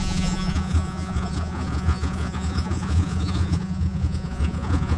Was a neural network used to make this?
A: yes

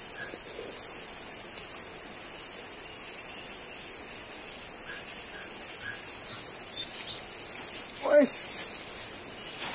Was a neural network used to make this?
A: no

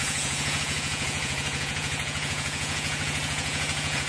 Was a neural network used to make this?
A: yes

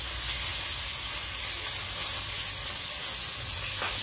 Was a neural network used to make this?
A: no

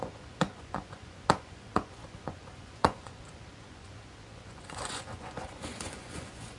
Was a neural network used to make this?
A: yes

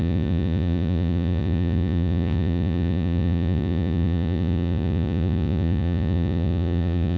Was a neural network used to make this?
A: yes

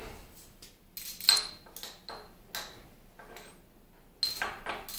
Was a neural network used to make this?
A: no